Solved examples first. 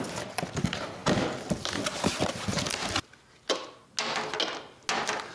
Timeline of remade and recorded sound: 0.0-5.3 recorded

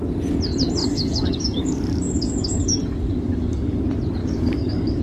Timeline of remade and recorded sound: 0.0-0.8 recorded; 0.8-3.8 remade; 3.8-4.2 recorded; 4.2-5.0 remade

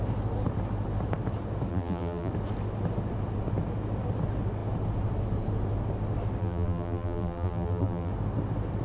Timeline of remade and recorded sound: 0.0-1.7 recorded; 1.7-2.3 remade; 2.3-6.4 recorded; 6.4-8.1 remade; 8.1-8.8 recorded

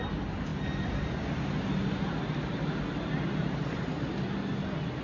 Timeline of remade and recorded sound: 0.0-5.0 recorded

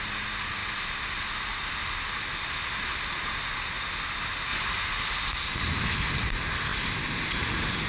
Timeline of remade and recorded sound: 0.0-7.9 recorded

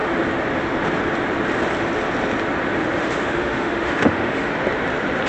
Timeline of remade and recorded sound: 0.0-2.8 recorded; 2.8-4.5 remade; 4.5-5.3 recorded